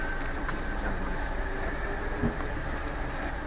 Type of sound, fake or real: real